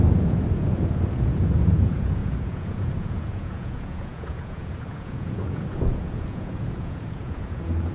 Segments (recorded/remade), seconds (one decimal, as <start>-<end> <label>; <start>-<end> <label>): 0.0-7.9 remade